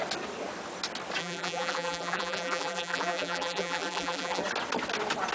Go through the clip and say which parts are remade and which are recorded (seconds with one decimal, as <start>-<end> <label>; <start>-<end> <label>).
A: 0.0-1.2 recorded; 1.2-4.4 remade; 4.4-5.3 recorded